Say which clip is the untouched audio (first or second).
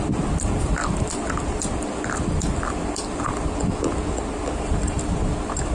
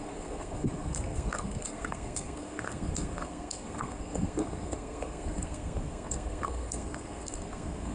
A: first